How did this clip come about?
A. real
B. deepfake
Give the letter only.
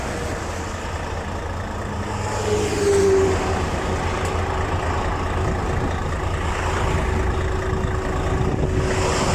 A